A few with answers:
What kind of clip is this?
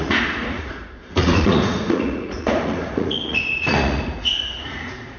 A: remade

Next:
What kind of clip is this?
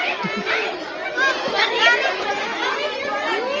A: recorded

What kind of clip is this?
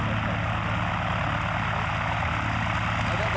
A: recorded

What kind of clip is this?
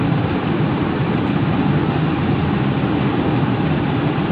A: remade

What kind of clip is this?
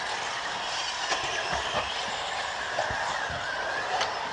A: recorded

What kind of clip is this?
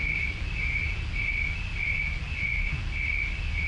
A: recorded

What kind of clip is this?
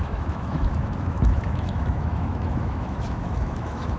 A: remade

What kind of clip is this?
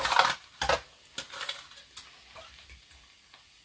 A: recorded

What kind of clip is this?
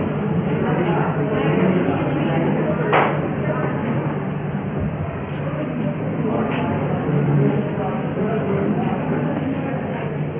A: recorded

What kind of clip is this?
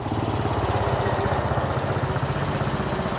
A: recorded